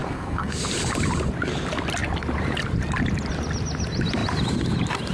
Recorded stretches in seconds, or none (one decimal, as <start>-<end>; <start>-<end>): 0.6-5.1